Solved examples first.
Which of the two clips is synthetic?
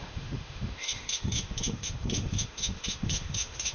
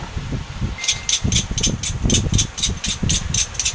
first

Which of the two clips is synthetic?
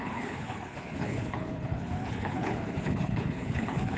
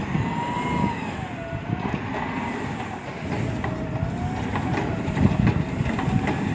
first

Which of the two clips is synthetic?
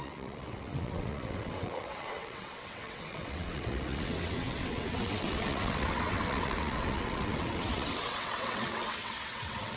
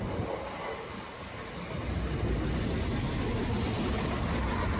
first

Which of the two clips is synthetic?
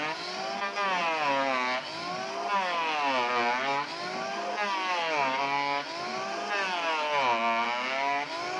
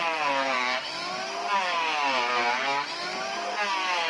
second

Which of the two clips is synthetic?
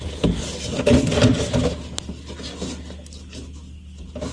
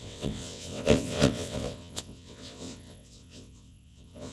second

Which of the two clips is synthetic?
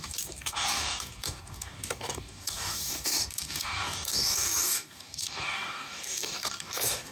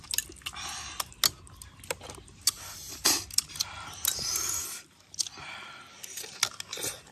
first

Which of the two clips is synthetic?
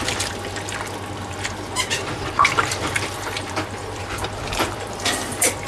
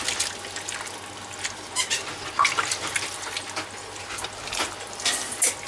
first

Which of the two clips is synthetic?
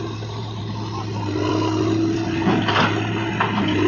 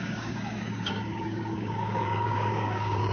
second